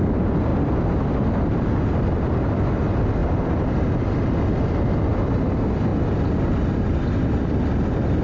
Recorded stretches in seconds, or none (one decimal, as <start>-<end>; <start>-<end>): 0.0-3.2; 3.9-8.2